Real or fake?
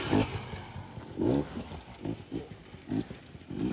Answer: real